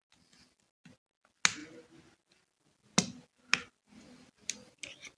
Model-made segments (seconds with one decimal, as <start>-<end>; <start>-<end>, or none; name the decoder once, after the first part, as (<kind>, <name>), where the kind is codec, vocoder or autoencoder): none